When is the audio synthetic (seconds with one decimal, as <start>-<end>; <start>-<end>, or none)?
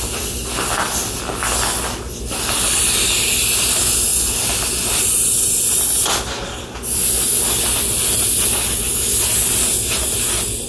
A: none